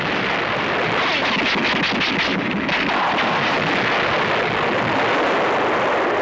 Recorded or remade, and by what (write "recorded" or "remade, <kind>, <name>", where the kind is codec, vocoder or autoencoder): recorded